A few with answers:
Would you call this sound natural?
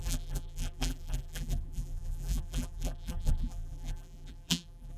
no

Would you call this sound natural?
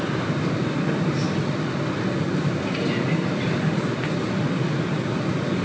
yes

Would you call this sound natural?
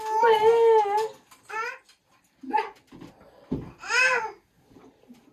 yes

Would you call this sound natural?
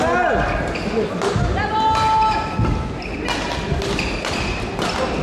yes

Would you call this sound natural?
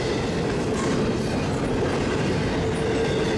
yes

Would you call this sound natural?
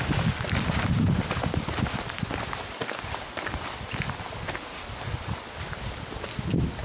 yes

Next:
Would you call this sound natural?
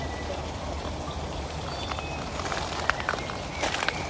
yes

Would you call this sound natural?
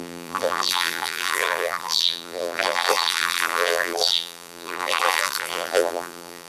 no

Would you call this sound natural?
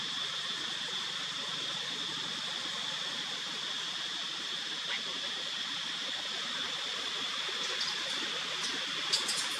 yes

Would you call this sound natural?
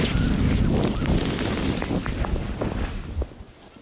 yes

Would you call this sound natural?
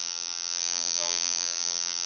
no